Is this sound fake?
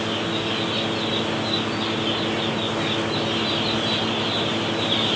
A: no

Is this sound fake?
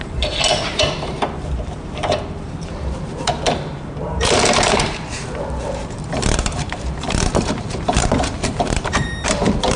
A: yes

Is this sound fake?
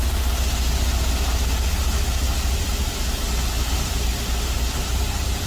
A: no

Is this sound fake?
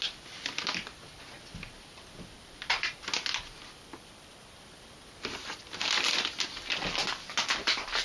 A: no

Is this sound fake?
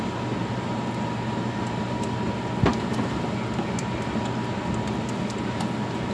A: no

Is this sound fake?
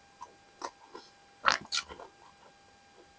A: no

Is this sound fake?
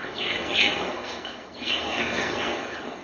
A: yes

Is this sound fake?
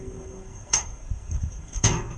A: yes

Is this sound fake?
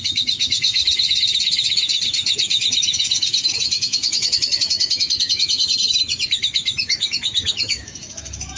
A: yes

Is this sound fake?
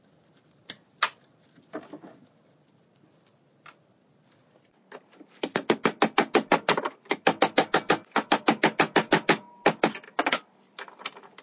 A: no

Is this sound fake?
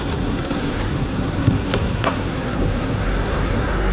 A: yes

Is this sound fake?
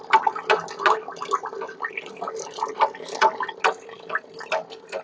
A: no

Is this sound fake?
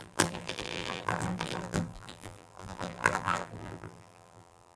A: yes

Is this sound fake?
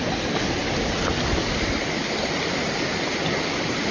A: no